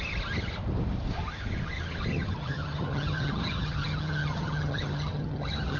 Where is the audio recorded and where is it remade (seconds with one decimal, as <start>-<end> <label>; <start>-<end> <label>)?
0.0-2.1 recorded; 2.1-5.8 remade